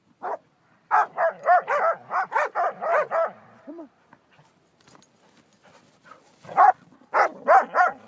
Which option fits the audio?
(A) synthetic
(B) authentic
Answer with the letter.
B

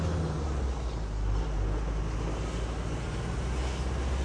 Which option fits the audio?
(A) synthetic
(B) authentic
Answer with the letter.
B